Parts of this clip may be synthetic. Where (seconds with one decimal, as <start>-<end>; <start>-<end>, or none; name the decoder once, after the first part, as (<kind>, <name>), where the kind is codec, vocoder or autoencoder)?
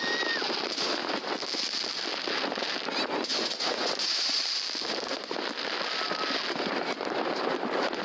3.3-4.4 (vocoder, Vocos)